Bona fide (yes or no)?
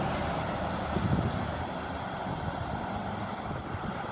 yes